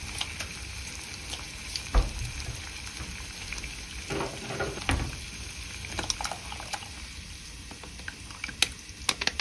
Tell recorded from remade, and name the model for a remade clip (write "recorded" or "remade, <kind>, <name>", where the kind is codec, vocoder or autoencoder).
recorded